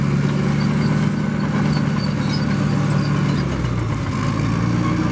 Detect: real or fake real